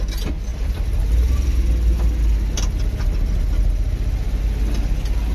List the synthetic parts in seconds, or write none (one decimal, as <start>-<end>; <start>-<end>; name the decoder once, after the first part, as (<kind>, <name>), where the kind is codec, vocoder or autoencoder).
none